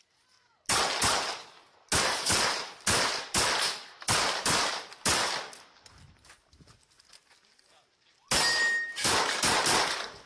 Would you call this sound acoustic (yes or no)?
yes